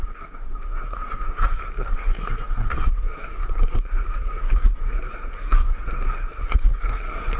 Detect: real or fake fake